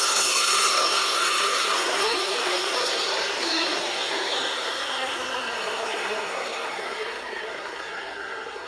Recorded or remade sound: remade